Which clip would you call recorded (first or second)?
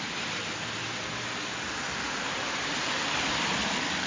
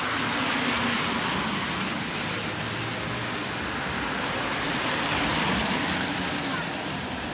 second